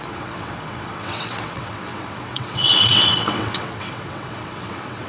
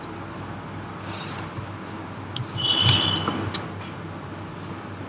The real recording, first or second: second